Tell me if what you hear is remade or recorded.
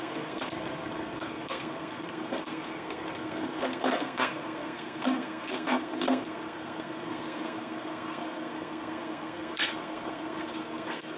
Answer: remade